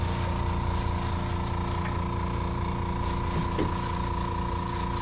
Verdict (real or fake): real